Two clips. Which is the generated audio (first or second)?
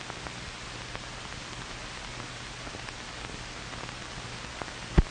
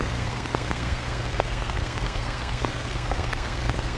second